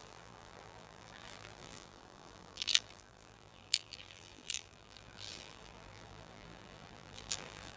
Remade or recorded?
remade